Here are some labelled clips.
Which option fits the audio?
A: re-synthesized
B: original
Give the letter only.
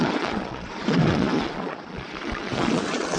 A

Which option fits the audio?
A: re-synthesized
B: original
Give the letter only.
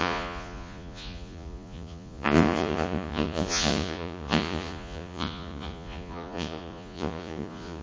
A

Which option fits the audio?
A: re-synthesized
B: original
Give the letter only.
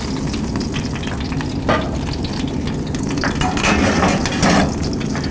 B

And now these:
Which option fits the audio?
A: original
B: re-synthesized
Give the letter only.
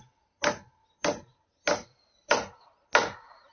A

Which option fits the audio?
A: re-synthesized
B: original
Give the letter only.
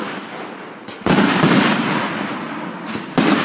B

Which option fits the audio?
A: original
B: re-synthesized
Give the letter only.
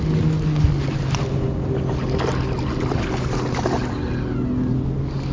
A